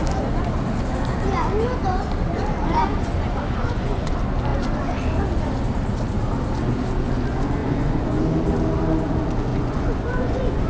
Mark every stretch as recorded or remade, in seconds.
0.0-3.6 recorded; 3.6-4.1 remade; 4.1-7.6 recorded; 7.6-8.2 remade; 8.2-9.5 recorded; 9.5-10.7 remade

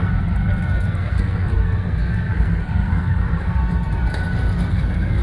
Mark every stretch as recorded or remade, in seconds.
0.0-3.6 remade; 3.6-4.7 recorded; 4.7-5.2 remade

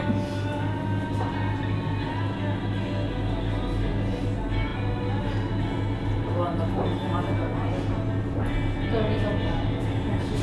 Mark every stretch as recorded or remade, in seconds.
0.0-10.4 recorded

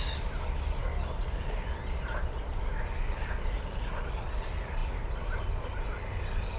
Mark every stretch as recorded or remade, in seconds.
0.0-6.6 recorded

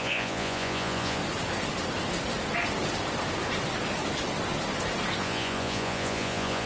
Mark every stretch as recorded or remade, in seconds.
0.0-1.2 remade; 1.2-5.2 recorded; 5.2-6.7 remade

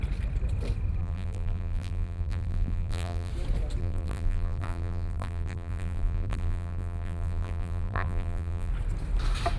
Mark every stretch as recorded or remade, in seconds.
0.0-1.0 recorded; 1.0-3.3 remade; 3.3-3.8 recorded; 3.8-8.7 remade; 8.7-9.6 recorded

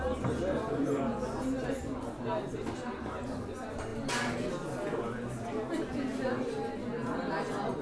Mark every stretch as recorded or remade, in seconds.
0.0-7.8 recorded